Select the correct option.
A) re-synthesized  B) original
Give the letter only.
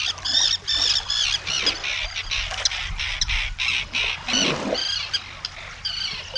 B